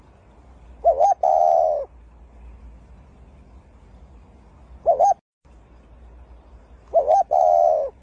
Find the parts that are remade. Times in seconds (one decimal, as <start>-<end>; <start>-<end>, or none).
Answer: none